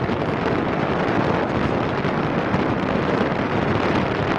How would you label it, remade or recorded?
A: recorded